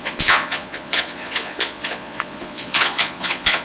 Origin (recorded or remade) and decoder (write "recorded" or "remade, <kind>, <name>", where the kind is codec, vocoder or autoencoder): remade, vocoder, Vocos